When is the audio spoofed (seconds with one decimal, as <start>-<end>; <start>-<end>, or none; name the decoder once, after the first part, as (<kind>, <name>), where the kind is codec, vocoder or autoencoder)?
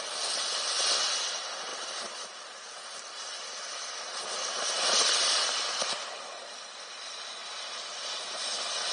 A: none